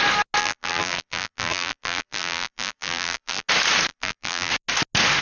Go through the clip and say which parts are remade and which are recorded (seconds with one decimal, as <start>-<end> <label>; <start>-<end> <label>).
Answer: 0.0-0.4 recorded; 0.4-3.5 remade; 3.5-3.9 recorded; 3.9-4.5 remade; 4.5-5.2 recorded

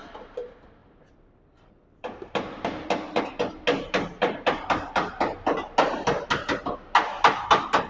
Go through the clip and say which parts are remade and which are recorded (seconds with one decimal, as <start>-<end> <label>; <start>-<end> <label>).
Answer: 0.0-0.8 recorded; 0.8-3.2 remade; 3.2-7.9 recorded

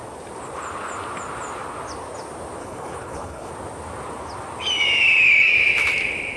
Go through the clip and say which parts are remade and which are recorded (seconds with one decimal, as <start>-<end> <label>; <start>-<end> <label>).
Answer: 0.0-2.6 recorded; 2.6-3.5 remade; 3.5-6.4 recorded

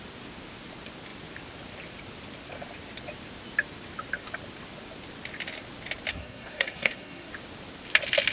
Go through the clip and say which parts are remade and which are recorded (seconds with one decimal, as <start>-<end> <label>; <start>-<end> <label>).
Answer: 0.0-6.1 recorded; 6.1-7.3 remade; 7.3-8.3 recorded

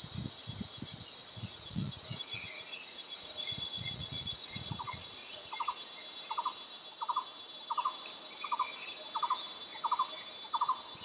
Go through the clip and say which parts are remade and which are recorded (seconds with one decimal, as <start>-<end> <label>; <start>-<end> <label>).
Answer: 0.0-1.2 recorded; 1.2-5.5 remade; 5.5-11.0 recorded

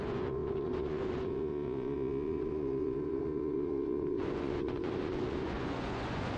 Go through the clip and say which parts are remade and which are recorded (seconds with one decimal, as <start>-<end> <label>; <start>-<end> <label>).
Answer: 0.0-6.4 remade